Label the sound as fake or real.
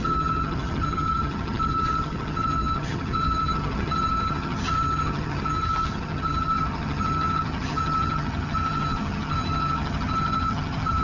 fake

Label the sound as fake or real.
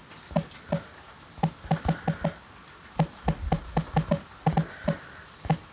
real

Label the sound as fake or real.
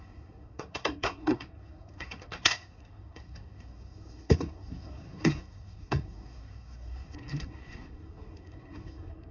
fake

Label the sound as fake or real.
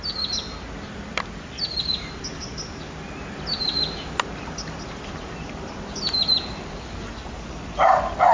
real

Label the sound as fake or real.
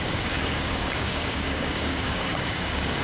fake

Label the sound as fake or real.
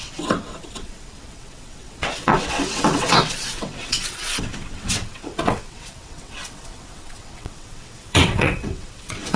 fake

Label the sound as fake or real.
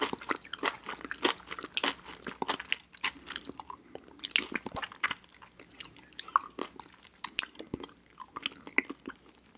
real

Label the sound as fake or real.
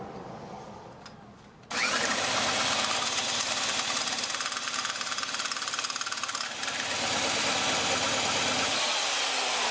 real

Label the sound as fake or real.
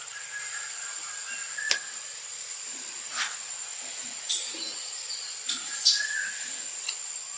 real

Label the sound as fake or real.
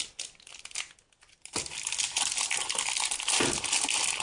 real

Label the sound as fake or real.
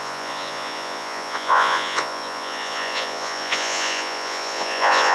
fake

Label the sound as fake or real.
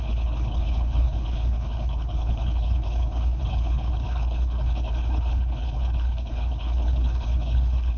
fake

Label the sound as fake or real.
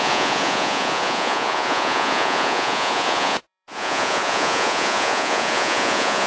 fake